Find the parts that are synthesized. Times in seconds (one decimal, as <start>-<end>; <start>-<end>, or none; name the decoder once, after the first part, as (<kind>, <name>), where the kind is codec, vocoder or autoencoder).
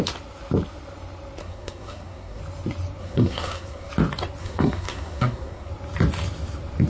1.4-2.4 (codec, SNAC); 3.0-3.9; 4.4-5.7